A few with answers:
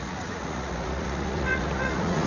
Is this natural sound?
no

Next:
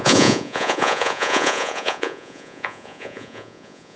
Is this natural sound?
no